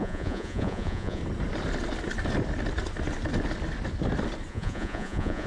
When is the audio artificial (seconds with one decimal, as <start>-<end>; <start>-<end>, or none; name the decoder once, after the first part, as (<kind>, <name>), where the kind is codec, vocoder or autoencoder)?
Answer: 0.0-1.2 (vocoder, Vocos); 4.5-5.5